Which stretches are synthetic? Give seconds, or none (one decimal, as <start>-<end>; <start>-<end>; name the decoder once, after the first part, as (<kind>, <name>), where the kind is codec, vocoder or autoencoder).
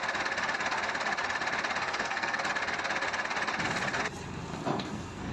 1.8-2.4 (codec, SNAC); 4.5-5.3